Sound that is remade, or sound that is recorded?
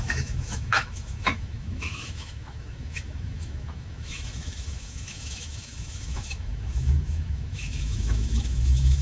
remade